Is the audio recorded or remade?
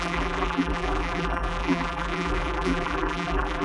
remade